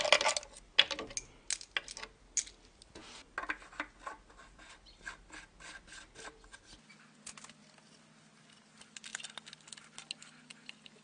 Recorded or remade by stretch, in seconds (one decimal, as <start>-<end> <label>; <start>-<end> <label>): 0.0-11.0 recorded